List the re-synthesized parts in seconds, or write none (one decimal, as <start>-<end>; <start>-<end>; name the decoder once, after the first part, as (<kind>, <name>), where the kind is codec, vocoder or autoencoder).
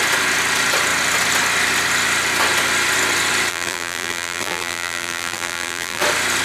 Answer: 3.5-6.0 (vocoder, BigVGAN v2)